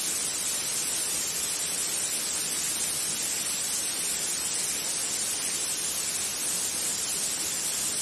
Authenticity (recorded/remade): recorded